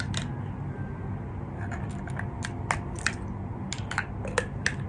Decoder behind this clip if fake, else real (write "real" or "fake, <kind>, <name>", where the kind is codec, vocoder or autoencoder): real